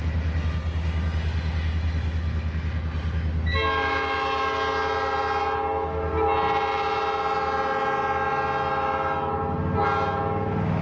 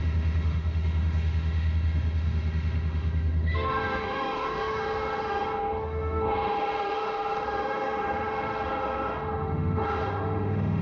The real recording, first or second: first